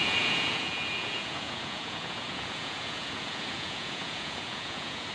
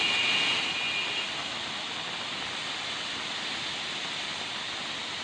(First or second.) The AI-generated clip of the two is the first